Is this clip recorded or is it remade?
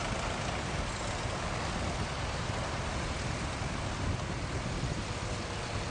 recorded